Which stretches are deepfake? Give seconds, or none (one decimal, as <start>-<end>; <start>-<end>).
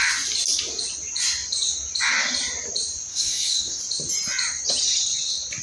3.1-3.8